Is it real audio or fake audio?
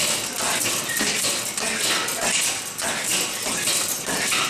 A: real